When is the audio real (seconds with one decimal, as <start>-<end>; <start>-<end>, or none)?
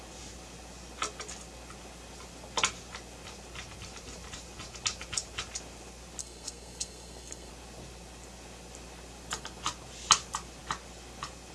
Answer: 0.0-6.2; 7.5-11.5